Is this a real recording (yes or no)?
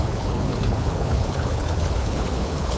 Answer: no